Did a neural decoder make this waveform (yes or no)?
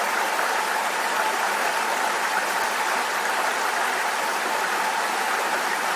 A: no